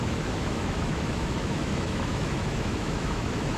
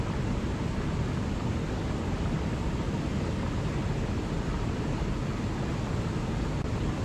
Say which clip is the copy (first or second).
first